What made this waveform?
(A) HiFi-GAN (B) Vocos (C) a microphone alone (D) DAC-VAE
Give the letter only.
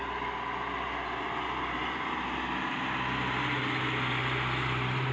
C